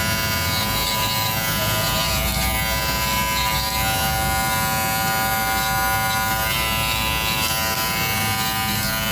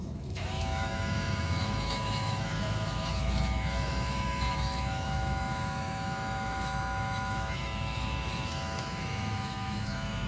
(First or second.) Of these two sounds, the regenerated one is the second